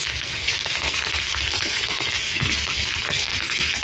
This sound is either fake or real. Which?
fake